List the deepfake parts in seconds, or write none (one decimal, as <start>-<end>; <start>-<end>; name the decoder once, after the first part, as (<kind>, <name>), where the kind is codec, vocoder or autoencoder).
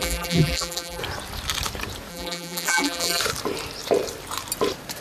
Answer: 0.0-1.0 (vocoder, BigVGAN v2); 2.1-3.2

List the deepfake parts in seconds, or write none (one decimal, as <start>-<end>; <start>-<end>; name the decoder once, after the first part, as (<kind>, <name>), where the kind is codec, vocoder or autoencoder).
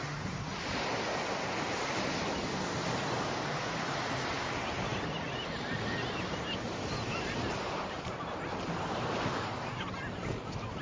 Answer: 4.9-9.6 (vocoder, BigVGAN v2)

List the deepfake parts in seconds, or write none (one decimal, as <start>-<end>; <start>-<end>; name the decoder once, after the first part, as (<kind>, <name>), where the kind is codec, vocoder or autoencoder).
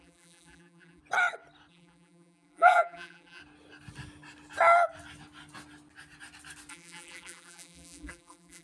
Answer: 0.0-1.0 (vocoder, BigVGAN v2); 1.7-3.4; 6.7-8.6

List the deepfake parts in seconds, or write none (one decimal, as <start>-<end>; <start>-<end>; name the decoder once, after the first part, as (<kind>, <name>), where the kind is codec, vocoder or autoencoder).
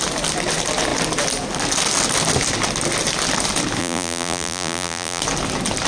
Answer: 3.8-5.2 (vocoder, BigVGAN v2)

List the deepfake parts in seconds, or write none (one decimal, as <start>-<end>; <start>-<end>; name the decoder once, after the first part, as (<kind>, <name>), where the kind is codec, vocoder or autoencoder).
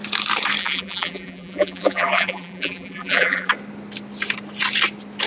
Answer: 0.6-3.5 (vocoder, BigVGAN v2)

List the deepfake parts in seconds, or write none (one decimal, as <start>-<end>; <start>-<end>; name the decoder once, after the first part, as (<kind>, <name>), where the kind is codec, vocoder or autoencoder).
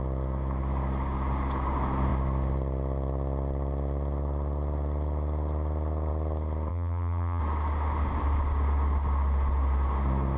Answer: 6.7-7.4 (vocoder, BigVGAN v2)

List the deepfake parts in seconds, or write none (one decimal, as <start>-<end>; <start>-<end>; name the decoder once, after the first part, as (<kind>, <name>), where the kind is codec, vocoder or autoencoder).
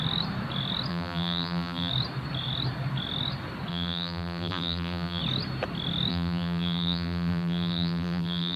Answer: 0.9-1.9 (vocoder, BigVGAN v2); 3.7-5.2; 6.1-8.6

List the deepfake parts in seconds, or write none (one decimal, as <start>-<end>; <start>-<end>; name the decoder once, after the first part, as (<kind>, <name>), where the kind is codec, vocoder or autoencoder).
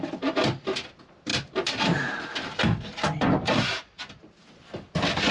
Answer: 1.3-4.5 (vocoder, BigVGAN v2)